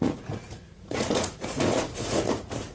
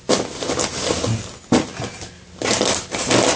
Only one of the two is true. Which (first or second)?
second